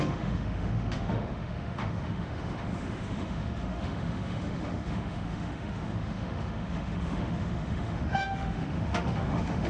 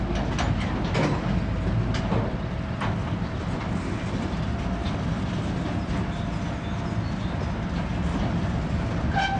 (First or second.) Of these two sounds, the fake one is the first